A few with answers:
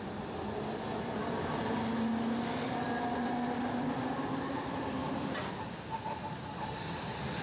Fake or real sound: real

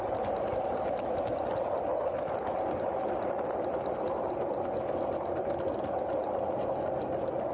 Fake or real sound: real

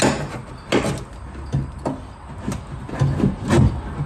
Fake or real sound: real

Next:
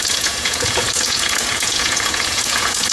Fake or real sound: fake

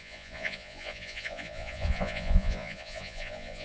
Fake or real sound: fake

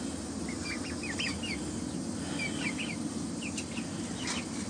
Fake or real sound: real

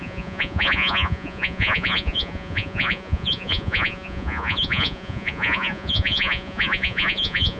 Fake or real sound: fake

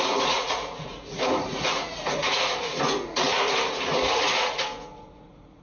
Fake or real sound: fake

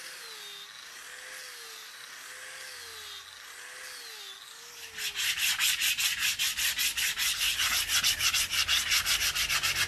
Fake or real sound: real